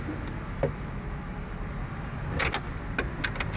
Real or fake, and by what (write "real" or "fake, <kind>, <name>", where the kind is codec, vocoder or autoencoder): real